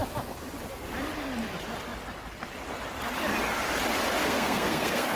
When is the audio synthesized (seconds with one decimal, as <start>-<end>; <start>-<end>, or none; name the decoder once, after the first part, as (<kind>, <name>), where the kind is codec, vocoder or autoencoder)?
4.2-5.2 (codec, SNAC)